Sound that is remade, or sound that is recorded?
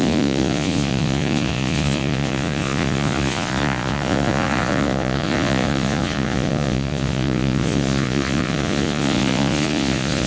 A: remade